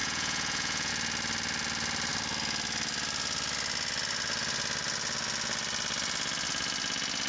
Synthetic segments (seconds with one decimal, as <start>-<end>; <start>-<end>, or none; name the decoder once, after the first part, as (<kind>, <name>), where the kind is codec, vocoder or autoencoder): 0.0-0.9 (vocoder, Vocos)